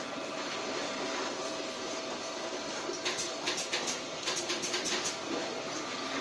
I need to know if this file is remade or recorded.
recorded